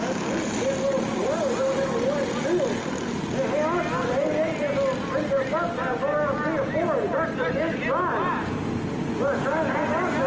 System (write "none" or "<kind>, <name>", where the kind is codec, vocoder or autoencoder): none